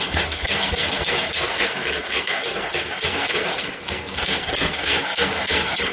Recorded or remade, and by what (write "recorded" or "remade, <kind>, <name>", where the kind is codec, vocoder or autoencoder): remade, codec, SNAC